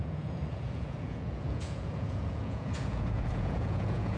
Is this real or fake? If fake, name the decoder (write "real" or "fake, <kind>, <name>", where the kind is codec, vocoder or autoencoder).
fake, vocoder, Vocos